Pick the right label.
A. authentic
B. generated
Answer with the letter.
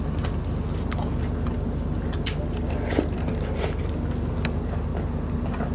A